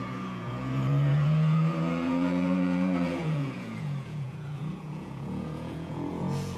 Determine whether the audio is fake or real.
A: fake